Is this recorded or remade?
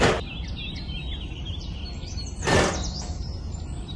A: recorded